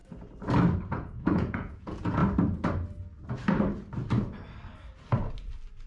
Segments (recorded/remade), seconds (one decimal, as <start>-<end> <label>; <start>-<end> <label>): 0.0-0.9 recorded; 0.9-2.2 remade; 2.2-5.9 recorded